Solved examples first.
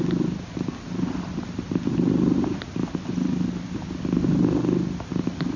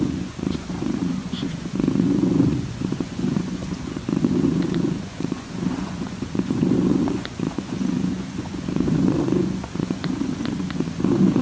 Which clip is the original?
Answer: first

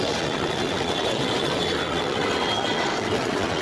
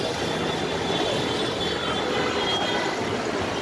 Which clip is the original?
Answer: second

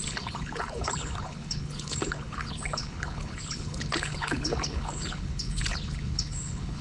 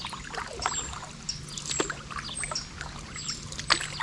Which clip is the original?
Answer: second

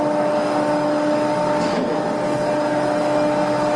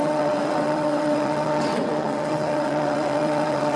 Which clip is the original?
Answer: first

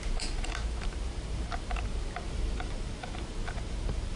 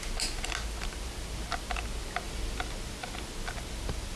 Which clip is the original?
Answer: second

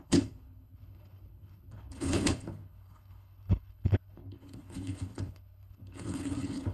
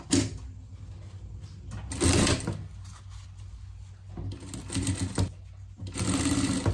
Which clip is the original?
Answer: second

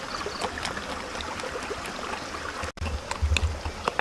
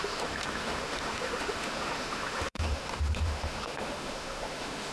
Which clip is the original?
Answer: first